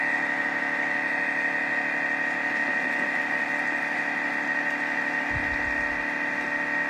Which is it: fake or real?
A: real